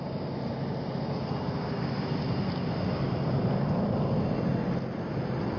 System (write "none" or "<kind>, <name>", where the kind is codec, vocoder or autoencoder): none